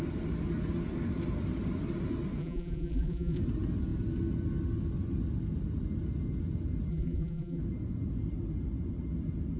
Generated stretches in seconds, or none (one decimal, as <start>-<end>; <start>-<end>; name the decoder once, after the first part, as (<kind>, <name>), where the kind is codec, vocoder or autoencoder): 2.4-3.4 (vocoder, BigVGAN v2); 6.9-7.6